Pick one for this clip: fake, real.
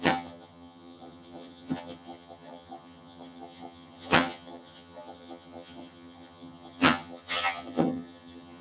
fake